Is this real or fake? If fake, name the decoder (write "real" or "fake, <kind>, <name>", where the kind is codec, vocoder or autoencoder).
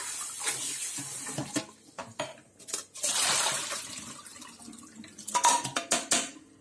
real